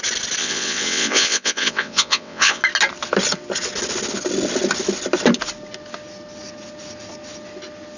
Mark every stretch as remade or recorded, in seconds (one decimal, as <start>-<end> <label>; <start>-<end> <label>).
0.0-0.4 recorded; 0.4-2.6 remade; 2.6-8.0 recorded